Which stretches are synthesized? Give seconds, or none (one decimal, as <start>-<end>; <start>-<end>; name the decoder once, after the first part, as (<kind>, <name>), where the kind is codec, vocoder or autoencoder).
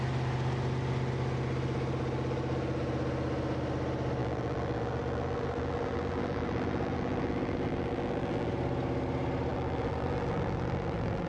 4.2-8.5 (vocoder, BigVGAN v2); 9.5-11.3